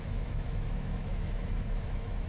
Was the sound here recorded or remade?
remade